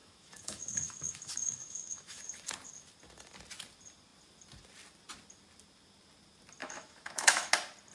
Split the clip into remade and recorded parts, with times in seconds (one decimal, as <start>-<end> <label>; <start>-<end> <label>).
0.0-2.2 remade; 2.2-6.6 recorded; 6.6-7.5 remade; 7.5-7.9 recorded

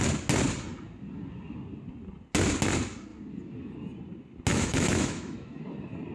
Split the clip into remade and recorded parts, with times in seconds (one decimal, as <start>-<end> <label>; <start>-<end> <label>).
0.0-4.5 recorded; 4.5-5.6 remade; 5.6-6.1 recorded